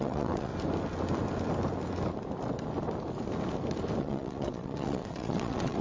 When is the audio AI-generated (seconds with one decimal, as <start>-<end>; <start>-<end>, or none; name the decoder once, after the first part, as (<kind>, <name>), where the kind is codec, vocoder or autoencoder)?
0.0-0.5 (vocoder, WaveNeXt); 4.0-5.8